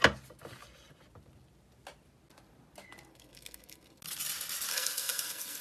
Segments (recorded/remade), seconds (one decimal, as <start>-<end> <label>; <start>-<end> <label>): 0.0-3.1 recorded; 3.1-4.0 remade; 4.0-4.7 recorded; 4.7-5.6 remade

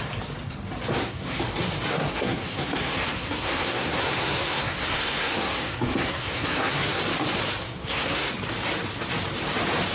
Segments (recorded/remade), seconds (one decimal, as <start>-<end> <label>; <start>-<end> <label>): 0.0-0.9 recorded; 0.9-1.4 remade; 1.4-1.9 recorded; 1.9-7.0 remade; 7.0-7.6 recorded; 7.6-8.3 remade; 8.3-9.9 recorded

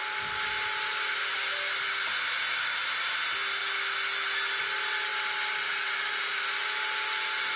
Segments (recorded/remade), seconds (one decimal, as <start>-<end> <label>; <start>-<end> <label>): 0.0-7.6 recorded

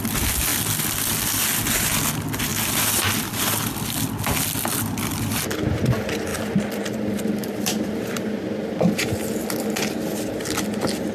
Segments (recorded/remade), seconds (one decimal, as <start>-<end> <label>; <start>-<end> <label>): 0.0-6.3 recorded; 6.3-9.6 remade; 9.6-11.1 recorded

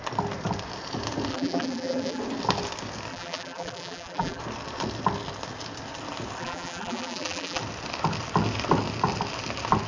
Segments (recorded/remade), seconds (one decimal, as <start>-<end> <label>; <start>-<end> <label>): 0.0-1.3 recorded; 1.3-2.2 remade; 2.2-3.1 recorded; 3.1-4.4 remade; 4.4-6.4 recorded; 6.4-7.6 remade; 7.6-9.9 recorded

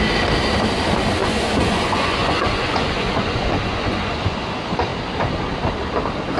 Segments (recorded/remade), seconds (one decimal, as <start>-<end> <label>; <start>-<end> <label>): 0.0-1.2 recorded; 1.2-4.4 remade; 4.4-6.4 recorded

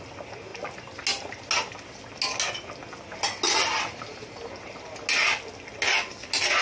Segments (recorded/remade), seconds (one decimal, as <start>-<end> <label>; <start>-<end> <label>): 0.0-6.6 recorded